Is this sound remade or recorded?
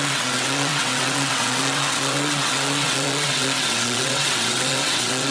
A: remade